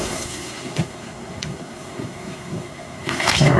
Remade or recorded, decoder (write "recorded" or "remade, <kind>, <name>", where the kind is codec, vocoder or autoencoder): remade, codec, SNAC